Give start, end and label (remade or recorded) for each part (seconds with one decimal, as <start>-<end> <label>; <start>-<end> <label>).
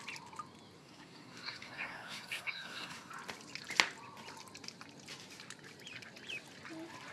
0.0-0.8 recorded; 0.8-3.1 remade; 3.1-7.1 recorded